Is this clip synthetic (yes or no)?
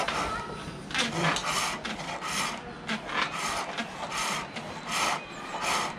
no